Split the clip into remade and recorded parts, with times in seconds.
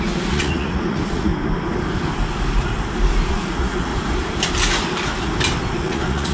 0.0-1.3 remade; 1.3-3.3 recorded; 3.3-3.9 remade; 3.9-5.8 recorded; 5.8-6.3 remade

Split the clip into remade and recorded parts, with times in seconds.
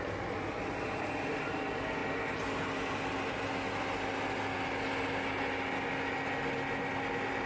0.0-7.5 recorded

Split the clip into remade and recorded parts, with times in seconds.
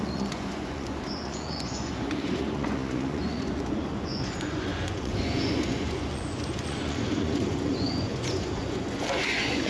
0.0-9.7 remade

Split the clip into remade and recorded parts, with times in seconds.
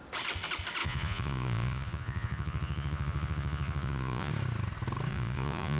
0.0-0.8 recorded; 0.8-4.3 remade; 4.3-5.1 recorded; 5.1-5.8 remade